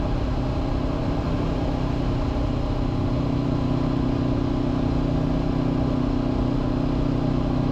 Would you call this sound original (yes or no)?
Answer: yes